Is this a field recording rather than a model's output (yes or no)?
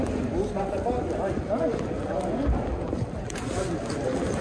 yes